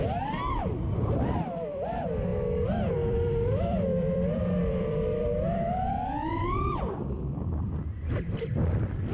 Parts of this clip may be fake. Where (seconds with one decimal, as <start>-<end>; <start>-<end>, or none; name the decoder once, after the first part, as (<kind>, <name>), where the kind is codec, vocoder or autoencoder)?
0.0-2.3 (vocoder, BigVGAN v2); 2.9-9.1